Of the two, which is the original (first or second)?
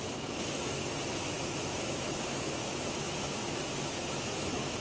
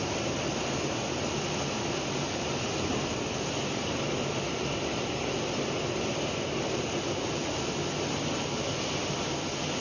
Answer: second